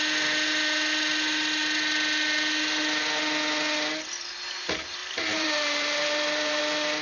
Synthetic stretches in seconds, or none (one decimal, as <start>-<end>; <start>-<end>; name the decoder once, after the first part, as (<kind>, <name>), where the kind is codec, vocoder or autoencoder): 5.0-6.6 (vocoder, BigVGAN v2)